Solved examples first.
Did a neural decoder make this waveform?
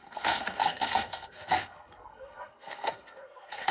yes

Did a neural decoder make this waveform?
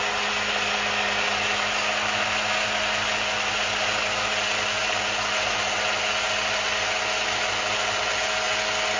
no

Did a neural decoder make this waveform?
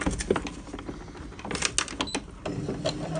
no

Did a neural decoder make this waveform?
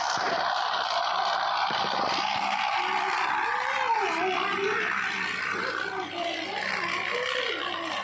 no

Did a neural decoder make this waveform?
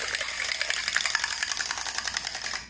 no